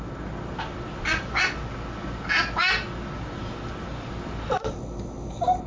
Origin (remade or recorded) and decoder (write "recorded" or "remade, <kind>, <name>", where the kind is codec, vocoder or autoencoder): recorded